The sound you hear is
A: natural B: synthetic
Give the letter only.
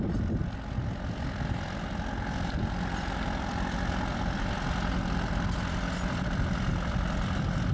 B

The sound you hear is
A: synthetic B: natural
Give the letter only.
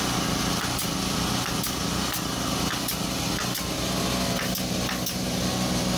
B